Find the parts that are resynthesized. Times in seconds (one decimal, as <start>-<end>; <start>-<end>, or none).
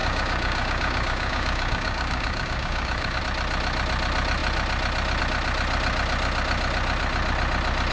0.0-3.2